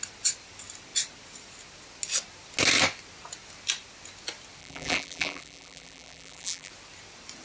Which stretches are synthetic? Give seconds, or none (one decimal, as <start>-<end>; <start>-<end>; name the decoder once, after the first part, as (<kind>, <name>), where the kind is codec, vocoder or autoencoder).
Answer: 4.6-6.7 (vocoder, BigVGAN v2)